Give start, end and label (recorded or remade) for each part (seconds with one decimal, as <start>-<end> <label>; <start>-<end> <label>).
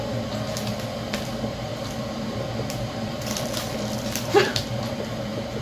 0.0-1.5 recorded; 1.5-4.9 remade; 4.9-5.6 recorded